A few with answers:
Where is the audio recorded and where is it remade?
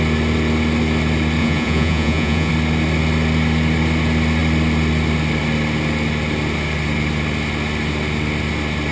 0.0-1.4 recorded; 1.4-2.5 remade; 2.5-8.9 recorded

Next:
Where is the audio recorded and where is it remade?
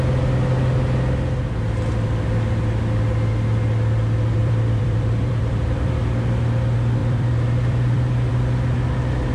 0.0-4.4 recorded; 4.4-5.9 remade; 5.9-7.0 recorded; 7.0-8.3 remade; 8.3-9.3 recorded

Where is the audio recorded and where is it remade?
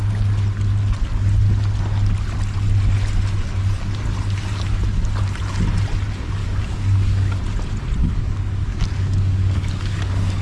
0.0-6.4 recorded; 6.4-7.4 remade; 7.4-8.0 recorded; 8.0-10.4 remade